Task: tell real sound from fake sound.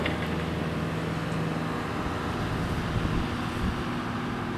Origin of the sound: real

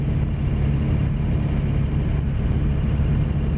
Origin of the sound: real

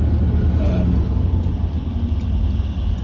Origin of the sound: real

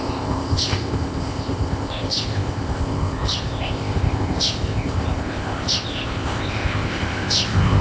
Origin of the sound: fake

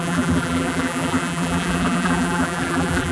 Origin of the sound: fake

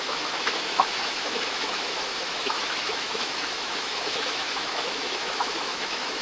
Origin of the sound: fake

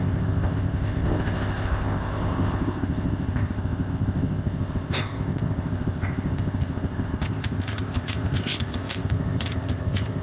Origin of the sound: fake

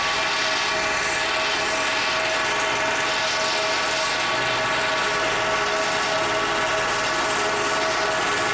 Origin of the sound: real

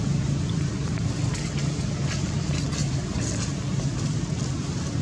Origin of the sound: real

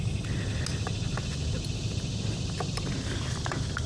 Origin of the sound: real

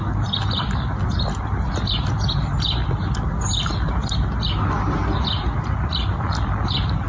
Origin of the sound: real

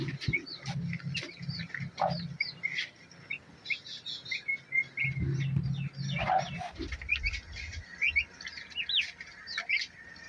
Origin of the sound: real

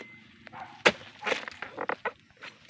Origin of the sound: real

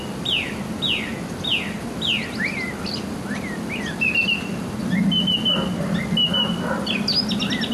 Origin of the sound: real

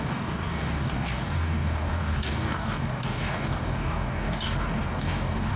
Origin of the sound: fake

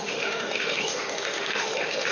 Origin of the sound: fake